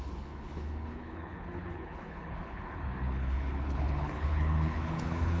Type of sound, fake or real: fake